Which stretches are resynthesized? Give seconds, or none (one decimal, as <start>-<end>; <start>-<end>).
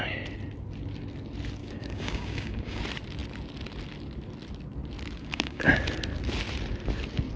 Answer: 1.6-2.8; 5.2-5.7